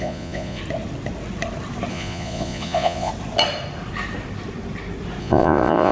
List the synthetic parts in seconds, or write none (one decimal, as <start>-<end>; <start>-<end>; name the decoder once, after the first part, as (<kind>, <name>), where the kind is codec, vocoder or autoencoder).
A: 0.0-0.6 (vocoder, Vocos); 1.9-3.1; 5.2-5.9